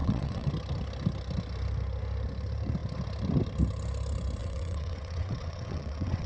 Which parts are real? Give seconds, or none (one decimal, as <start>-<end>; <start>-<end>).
0.5-4.4